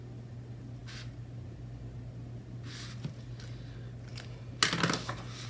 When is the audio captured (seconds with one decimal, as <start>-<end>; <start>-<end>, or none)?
0.0-5.5